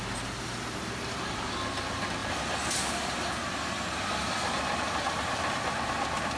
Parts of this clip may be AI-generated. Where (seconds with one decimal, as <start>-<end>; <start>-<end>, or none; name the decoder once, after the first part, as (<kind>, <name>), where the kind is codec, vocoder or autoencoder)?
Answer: 2.2-5.9 (vocoder, BigVGAN v2)